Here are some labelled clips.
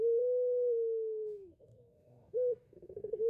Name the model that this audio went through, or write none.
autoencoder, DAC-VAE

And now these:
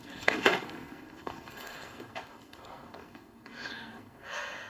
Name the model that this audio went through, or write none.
codec, SNAC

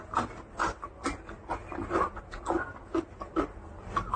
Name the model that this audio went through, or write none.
none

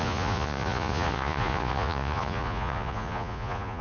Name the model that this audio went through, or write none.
vocoder, Vocos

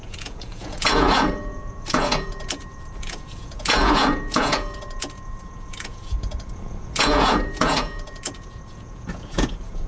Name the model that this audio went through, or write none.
vocoder, Vocos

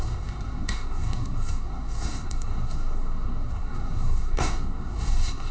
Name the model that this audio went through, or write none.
codec, SNAC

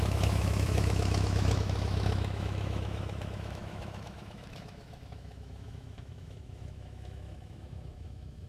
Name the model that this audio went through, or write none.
autoencoder, DAC-VAE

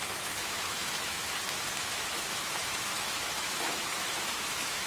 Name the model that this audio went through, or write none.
autoencoder, DAC-VAE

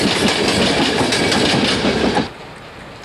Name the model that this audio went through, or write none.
none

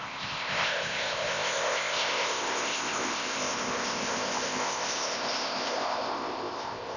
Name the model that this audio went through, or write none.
codec, ZipCodec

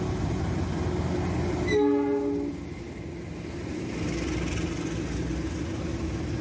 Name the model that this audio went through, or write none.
none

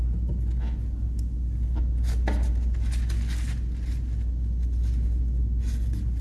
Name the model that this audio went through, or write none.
none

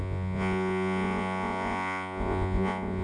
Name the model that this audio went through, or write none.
vocoder, Vocos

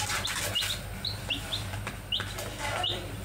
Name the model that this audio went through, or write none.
none